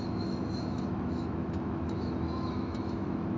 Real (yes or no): no